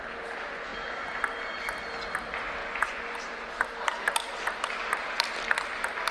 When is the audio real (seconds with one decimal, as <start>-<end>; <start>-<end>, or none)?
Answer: 0.0-2.6; 3.2-6.1

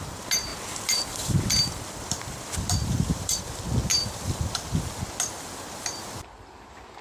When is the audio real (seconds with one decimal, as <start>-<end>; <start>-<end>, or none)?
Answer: 0.0-0.5; 3.4-3.9; 4.5-7.0

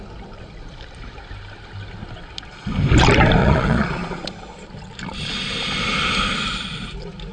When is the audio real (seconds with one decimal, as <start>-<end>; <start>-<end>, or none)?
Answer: 0.0-3.4; 4.3-7.3

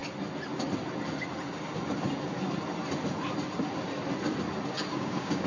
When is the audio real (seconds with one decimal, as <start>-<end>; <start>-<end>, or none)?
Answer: 0.0-4.9